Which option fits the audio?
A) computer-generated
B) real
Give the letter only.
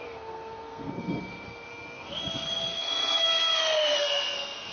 A